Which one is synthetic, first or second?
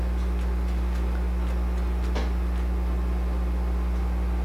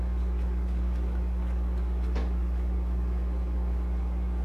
second